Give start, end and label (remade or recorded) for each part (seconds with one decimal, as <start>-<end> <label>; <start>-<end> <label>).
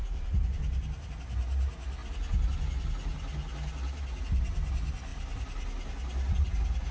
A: 0.0-1.1 remade; 1.1-6.9 recorded